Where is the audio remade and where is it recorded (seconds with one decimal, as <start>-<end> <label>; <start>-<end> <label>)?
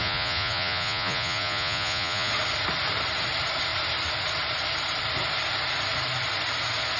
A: 0.0-2.3 remade; 2.3-7.0 recorded